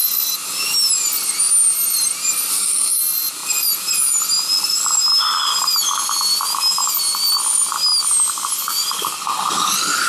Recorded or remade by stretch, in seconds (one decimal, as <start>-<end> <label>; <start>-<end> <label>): 0.0-2.5 recorded; 2.5-3.0 remade; 3.0-10.1 recorded